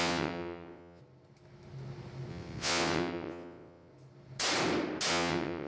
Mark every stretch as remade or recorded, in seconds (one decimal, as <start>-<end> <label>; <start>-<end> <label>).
0.0-1.0 remade; 1.0-2.3 recorded; 2.3-3.9 remade; 3.9-5.1 recorded; 5.1-5.7 remade